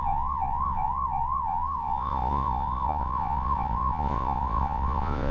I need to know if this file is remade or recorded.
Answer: remade